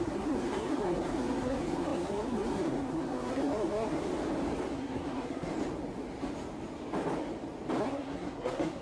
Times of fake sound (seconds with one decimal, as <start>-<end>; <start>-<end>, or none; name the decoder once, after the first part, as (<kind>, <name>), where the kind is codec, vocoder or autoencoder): 0.0-4.1 (codec, SNAC); 4.7-5.5; 7.8-8.8